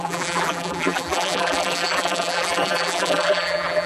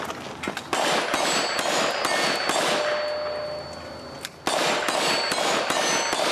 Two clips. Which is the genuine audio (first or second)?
second